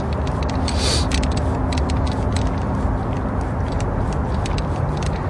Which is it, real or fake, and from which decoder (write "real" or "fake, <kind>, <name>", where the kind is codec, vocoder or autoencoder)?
real